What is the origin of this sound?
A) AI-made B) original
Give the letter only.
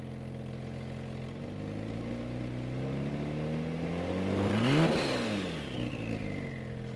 B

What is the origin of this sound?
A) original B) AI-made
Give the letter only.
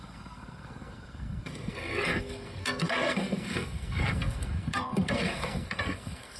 B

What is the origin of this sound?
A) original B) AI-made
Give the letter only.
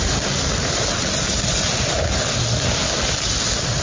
A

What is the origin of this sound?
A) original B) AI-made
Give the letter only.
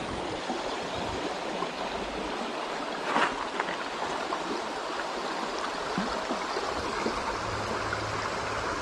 A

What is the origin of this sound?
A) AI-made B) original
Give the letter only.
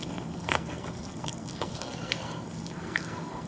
A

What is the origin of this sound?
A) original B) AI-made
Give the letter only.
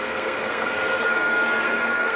B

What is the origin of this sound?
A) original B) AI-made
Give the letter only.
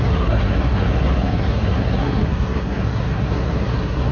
B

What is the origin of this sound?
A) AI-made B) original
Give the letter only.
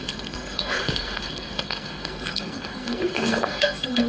A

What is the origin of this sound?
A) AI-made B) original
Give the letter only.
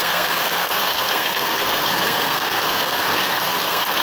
A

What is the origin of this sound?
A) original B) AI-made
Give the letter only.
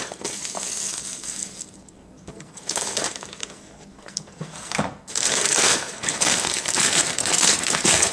B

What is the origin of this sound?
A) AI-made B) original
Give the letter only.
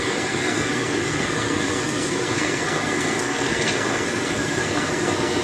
A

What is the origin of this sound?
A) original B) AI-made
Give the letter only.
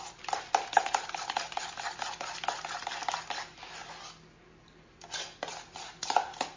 A